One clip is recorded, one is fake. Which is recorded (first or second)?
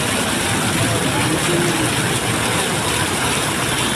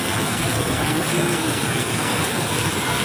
first